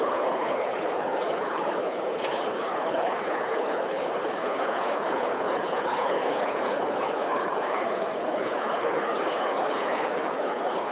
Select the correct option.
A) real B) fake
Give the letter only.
B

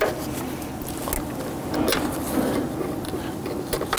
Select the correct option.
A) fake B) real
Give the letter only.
B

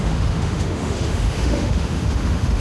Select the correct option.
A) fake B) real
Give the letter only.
A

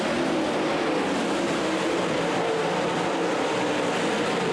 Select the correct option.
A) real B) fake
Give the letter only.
A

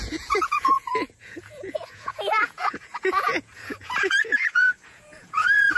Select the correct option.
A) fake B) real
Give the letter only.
A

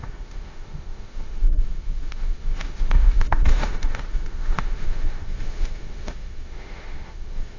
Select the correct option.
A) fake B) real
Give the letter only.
A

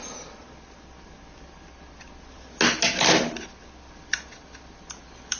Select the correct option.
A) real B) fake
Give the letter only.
A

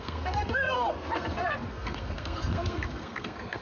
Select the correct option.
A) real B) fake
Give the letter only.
B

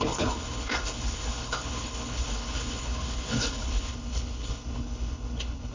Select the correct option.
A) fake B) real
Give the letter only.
A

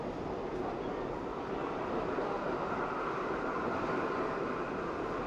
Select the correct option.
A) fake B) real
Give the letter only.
A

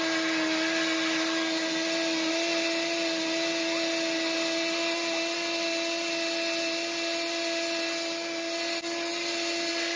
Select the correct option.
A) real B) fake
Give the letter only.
A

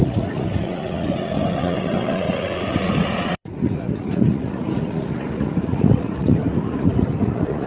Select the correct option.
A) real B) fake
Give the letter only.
B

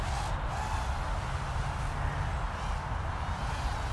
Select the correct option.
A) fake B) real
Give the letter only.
B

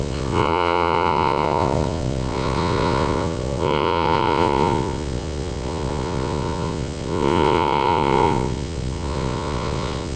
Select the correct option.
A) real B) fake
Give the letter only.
B